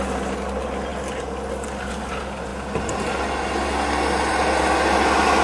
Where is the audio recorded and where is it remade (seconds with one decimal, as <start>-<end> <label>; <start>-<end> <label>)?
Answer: 0.0-5.4 recorded